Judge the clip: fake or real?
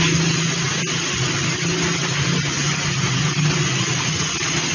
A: real